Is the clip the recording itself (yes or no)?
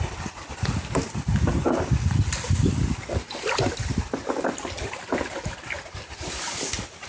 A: yes